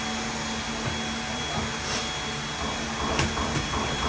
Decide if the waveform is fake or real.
real